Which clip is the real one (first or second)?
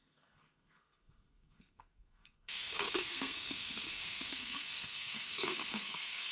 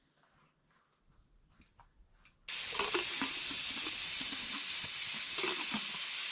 second